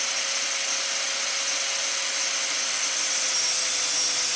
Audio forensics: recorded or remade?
recorded